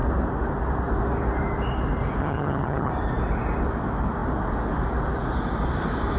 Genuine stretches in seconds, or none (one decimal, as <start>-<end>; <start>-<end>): 0.0-2.2; 2.9-6.2